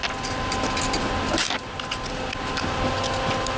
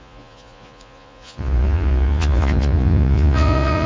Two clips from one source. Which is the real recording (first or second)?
first